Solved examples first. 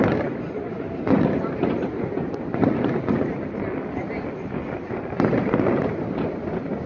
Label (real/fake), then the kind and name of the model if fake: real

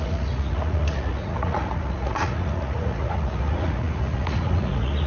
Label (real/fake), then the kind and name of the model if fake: fake, vocoder, Vocos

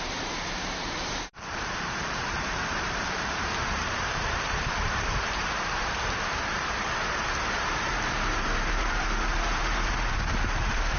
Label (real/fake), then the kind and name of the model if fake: fake, vocoder, BigVGAN v2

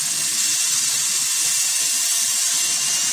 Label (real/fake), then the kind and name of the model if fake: real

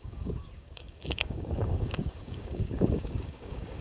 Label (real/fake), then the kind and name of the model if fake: fake, codec, DAC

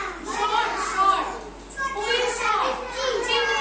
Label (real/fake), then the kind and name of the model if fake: real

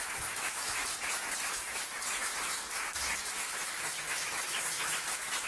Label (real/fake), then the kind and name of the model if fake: fake, autoencoder, DAC-VAE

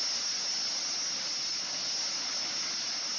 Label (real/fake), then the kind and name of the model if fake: real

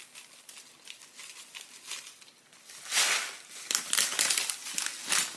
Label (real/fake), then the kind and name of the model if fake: real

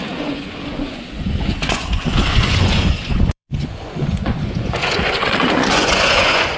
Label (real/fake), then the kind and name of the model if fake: fake, vocoder, Vocos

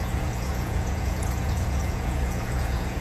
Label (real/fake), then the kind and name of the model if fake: fake, vocoder, Vocos